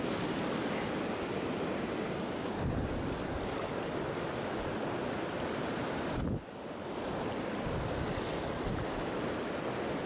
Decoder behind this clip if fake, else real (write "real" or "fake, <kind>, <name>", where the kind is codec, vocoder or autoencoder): real